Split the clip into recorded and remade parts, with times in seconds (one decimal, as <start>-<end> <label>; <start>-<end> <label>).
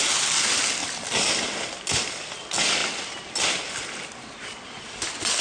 0.0-5.4 recorded